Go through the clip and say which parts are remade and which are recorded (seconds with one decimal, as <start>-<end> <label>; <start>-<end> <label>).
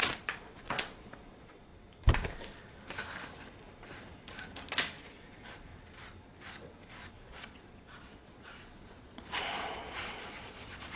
0.0-1.7 remade; 1.7-5.0 recorded; 5.0-5.7 remade; 5.7-7.1 recorded; 7.1-11.0 remade